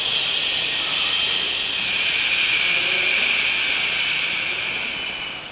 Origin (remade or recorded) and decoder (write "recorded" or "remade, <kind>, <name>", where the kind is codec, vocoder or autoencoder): recorded